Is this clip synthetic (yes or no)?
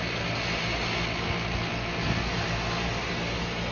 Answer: no